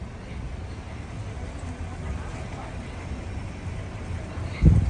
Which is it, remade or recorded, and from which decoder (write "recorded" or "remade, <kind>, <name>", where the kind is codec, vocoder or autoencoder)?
recorded